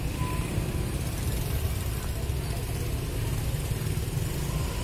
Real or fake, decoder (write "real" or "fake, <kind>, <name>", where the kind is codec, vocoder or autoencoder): real